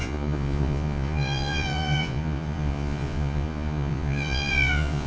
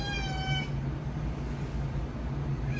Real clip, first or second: second